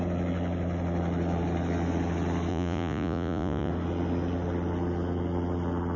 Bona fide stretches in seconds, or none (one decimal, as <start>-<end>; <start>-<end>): 0.0-2.5; 3.7-6.0